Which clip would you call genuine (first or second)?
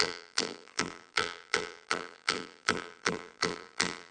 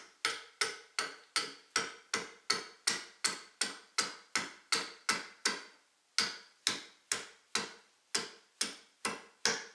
second